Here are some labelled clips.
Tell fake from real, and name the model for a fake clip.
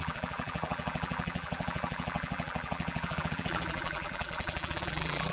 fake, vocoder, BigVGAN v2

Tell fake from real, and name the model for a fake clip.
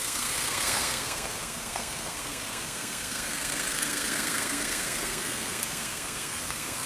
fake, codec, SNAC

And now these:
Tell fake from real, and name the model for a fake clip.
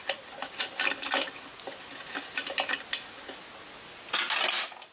real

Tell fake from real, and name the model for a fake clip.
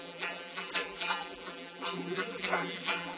fake, vocoder, BigVGAN v2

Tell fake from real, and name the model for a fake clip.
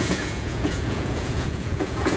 fake, vocoder, Vocos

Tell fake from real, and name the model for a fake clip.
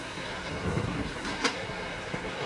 fake, codec, SNAC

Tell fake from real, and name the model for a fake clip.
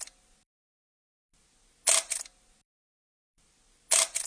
real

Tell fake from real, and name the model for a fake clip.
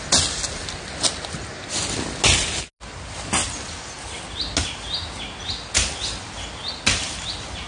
real